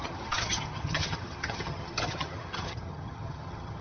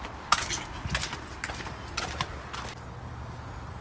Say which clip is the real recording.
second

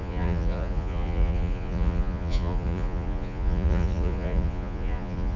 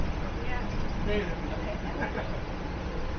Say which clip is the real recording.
second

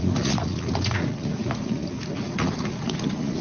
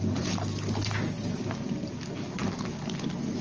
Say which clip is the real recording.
second